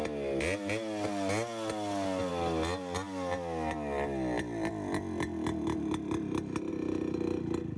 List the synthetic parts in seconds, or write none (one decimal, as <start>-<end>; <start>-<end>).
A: none